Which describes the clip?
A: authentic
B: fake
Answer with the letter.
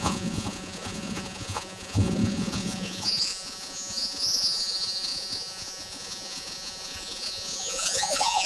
B